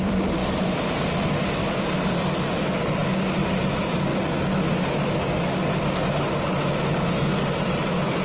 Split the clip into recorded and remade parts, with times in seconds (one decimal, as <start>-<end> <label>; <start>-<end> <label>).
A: 0.0-0.4 recorded; 0.4-1.3 remade; 1.3-8.2 recorded